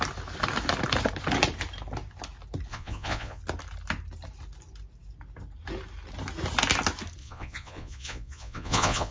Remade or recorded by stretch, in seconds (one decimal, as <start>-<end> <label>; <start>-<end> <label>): 0.0-2.7 recorded; 2.7-3.4 remade; 3.4-7.2 recorded; 7.2-9.1 remade